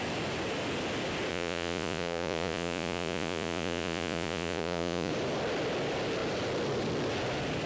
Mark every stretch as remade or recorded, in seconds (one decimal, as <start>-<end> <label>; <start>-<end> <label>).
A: 0.0-1.3 recorded; 1.3-5.1 remade; 5.1-7.7 recorded